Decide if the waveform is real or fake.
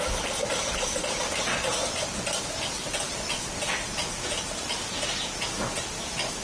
real